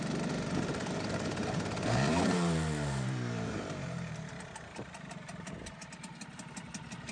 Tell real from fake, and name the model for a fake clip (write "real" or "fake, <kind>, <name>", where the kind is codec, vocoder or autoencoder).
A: fake, vocoder, BigVGAN v2